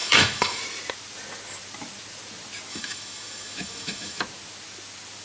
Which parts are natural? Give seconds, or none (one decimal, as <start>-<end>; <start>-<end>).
0.6-2.7; 4.2-5.2